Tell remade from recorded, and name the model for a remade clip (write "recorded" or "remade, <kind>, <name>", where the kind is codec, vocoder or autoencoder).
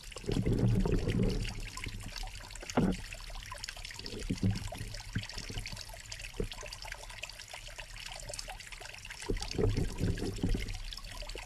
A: recorded